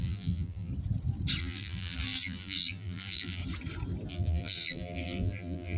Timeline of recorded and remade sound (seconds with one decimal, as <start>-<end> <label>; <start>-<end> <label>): 0.0-0.7 remade; 0.7-1.4 recorded; 1.4-3.4 remade; 3.4-4.1 recorded; 4.1-5.8 remade